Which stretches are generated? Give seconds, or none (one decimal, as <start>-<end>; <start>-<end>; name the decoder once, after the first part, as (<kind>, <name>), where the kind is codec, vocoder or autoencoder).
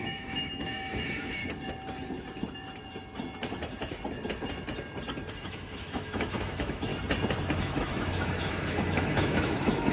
0.0-1.4 (autoencoder, DAC-VAE); 5.3-6.9; 7.6-9.9